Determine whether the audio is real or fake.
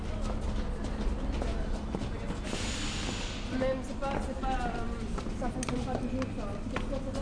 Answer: real